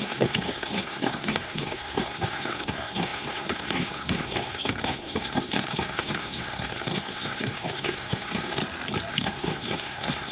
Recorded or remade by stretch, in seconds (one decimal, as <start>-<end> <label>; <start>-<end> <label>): 0.0-8.6 remade; 8.6-9.1 recorded; 9.1-10.3 remade